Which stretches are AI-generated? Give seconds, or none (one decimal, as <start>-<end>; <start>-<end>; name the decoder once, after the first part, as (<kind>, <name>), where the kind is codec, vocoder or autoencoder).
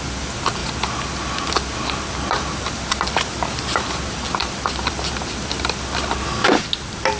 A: none